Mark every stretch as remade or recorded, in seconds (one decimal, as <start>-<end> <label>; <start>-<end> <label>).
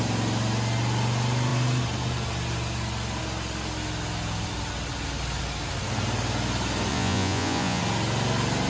0.0-6.9 recorded; 6.9-7.8 remade; 7.8-8.7 recorded